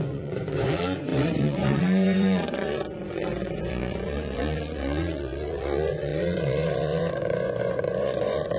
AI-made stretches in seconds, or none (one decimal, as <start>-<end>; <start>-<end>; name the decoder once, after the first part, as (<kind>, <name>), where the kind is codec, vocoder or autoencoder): 0.0-8.6 (vocoder, Vocos)